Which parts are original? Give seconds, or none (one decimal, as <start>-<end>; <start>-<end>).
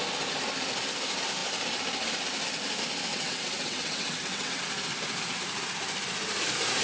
0.0-3.1; 4.6-6.8